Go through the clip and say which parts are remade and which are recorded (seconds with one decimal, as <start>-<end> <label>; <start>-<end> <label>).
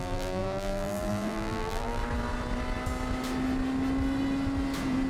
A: 0.0-2.0 remade; 2.0-5.1 recorded